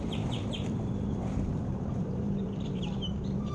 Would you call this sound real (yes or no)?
no